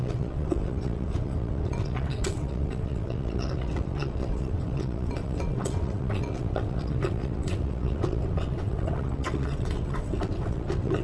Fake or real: fake